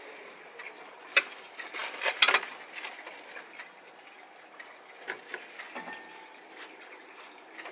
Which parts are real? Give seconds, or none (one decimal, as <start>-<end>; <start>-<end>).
0.0-7.7